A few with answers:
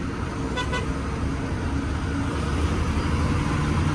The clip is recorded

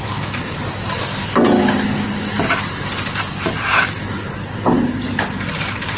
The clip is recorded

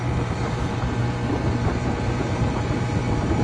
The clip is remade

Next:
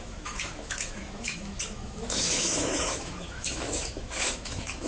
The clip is remade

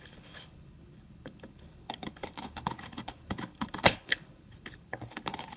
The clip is remade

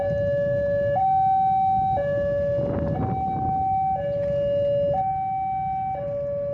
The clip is recorded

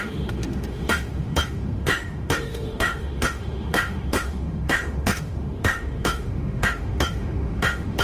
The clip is remade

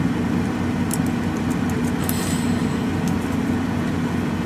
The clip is recorded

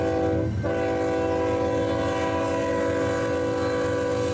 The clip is recorded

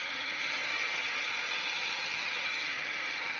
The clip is remade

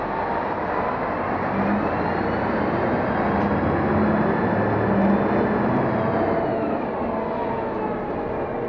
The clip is recorded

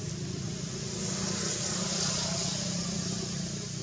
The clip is recorded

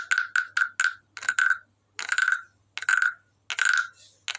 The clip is recorded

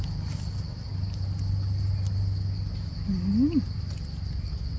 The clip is recorded